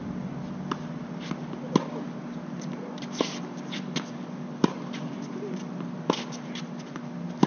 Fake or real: real